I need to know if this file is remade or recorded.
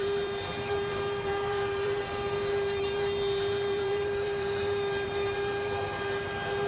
remade